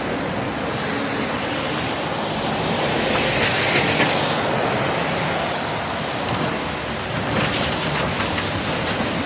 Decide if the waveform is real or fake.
real